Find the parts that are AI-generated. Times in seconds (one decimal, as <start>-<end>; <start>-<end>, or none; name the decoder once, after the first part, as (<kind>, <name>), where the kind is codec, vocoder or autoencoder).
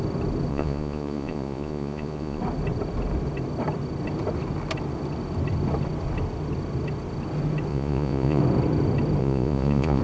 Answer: 0.5-2.4 (vocoder, Vocos); 7.7-8.4; 9.2-10.0